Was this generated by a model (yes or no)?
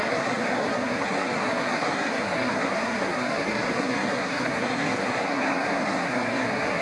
yes